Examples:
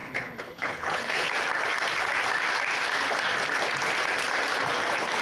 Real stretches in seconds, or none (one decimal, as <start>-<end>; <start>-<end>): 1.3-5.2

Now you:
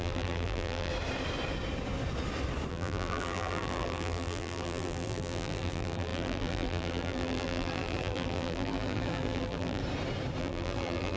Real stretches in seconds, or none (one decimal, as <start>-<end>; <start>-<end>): 0.9-2.7; 9.8-10.4

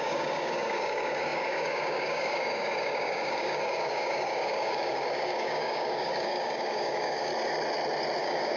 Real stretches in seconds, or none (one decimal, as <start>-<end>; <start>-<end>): 7.3-8.2